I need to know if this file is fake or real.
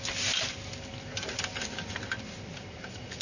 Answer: real